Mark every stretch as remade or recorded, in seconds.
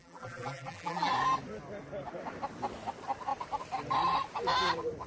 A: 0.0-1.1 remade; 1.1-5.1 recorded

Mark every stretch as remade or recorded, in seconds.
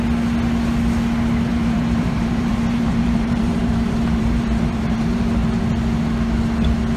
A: 0.0-1.5 recorded; 1.5-5.6 remade; 5.6-7.0 recorded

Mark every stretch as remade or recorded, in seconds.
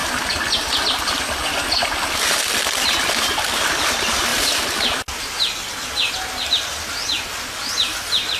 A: 0.0-7.6 recorded; 7.6-8.4 remade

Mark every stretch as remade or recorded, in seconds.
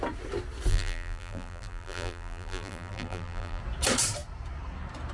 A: 0.0-0.7 recorded; 0.7-3.6 remade; 3.6-5.1 recorded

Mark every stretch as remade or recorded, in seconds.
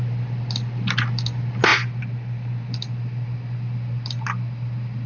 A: 0.0-5.1 recorded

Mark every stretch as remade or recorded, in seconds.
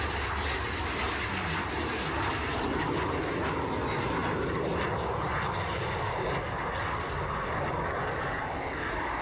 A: 0.0-4.2 recorded; 4.2-5.3 remade; 5.3-9.2 recorded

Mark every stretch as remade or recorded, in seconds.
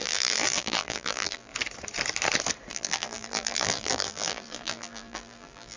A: 0.0-1.5 remade; 1.5-2.7 recorded; 2.7-5.8 remade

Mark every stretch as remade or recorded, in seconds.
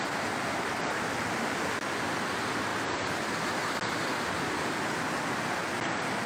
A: 0.0-6.3 recorded